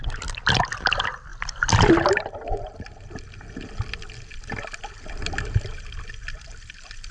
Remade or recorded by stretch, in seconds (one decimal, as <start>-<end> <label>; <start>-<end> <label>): 0.0-7.1 recorded